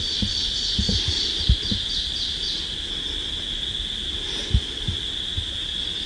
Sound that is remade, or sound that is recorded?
recorded